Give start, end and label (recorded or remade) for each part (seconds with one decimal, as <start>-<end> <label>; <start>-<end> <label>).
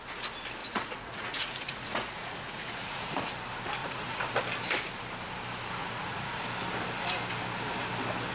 0.0-0.6 recorded; 0.6-3.3 remade; 3.3-3.8 recorded; 3.8-4.3 remade; 4.3-5.8 recorded; 5.8-6.4 remade; 6.4-8.3 recorded